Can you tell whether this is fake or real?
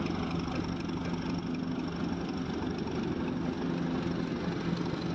real